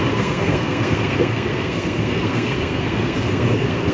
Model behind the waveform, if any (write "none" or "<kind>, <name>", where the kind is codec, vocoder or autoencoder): codec, SNAC